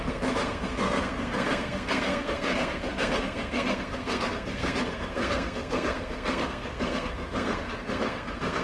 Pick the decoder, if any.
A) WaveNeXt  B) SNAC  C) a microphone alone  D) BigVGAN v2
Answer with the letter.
B